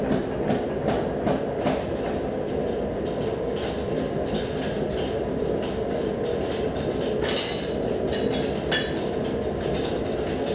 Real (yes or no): yes